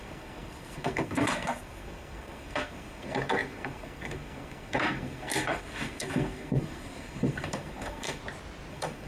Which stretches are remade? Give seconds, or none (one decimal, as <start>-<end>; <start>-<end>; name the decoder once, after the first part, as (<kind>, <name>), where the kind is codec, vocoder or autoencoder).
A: 0.0-8.2 (codec, SNAC); 8.7-9.1